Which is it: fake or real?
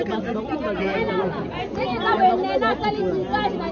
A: real